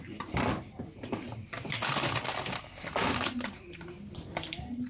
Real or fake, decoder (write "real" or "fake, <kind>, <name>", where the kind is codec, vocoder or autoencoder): fake, vocoder, BigVGAN v2